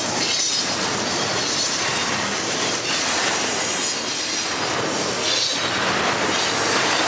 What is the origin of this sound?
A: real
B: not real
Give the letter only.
A